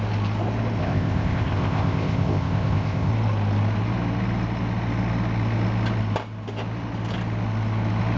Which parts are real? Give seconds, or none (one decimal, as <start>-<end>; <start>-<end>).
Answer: 0.0-0.8; 3.1-8.2